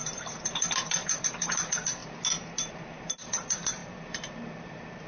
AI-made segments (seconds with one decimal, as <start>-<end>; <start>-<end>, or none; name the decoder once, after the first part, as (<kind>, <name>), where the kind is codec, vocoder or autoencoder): 0.0-5.1 (vocoder, BigVGAN v2)